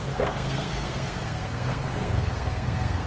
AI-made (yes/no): yes